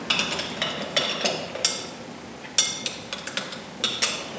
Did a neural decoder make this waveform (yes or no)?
no